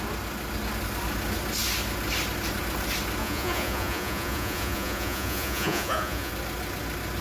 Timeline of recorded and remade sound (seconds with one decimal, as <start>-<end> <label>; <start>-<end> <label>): 0.0-3.2 recorded; 3.2-6.3 remade; 6.3-7.2 recorded